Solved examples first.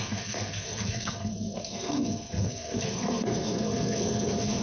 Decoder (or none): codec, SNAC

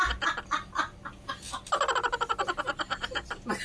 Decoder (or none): none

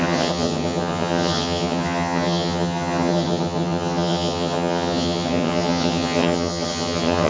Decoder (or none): vocoder, HiFi-GAN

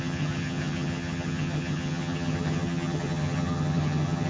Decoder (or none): vocoder, HiFi-GAN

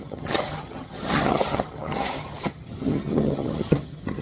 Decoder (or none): vocoder, HiFi-GAN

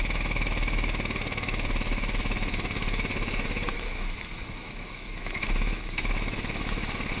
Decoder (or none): autoencoder, DAC-VAE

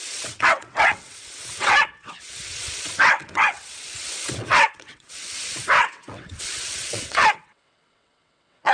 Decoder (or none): vocoder, WaveNeXt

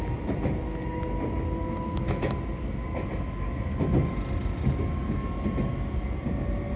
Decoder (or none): none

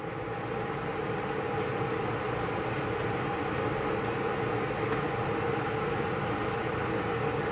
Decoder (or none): none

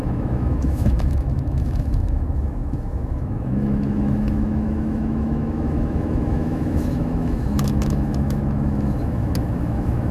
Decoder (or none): autoencoder, DAC-VAE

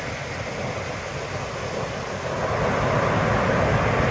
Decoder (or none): none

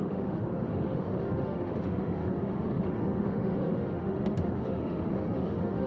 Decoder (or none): autoencoder, DAC-VAE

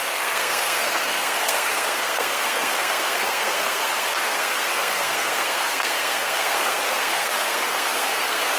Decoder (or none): codec, SNAC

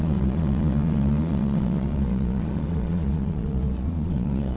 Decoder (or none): vocoder, Vocos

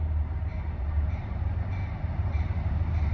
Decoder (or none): vocoder, BigVGAN v2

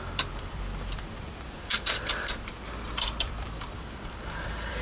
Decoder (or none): vocoder, BigVGAN v2